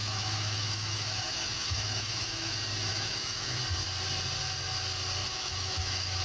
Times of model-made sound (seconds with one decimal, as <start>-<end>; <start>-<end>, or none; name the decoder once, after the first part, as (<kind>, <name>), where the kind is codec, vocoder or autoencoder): 0.0-2.5 (autoencoder, DAC-VAE); 2.9-3.6; 5.2-6.2